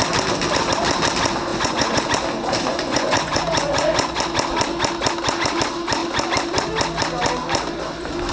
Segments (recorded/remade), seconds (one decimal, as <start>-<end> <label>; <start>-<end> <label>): 0.0-1.5 recorded; 1.5-2.0 remade; 2.0-2.7 recorded; 2.7-4.2 remade; 4.2-8.3 recorded